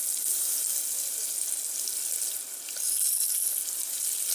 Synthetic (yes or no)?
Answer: no